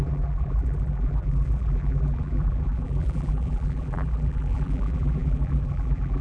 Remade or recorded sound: remade